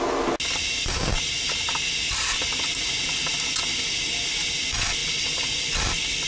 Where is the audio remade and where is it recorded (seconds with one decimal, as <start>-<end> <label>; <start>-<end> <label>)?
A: 0.0-5.0 recorded; 5.0-6.3 remade